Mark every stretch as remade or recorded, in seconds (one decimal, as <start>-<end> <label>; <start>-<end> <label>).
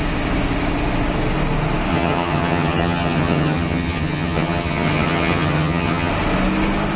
0.0-1.9 recorded; 1.9-6.1 remade; 6.1-7.0 recorded